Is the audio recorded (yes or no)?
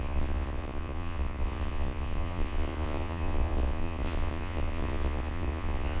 no